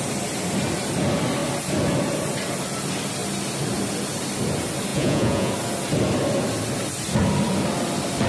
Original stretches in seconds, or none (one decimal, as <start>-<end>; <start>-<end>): 0.0-4.9; 5.5-8.3